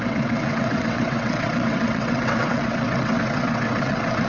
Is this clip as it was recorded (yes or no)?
no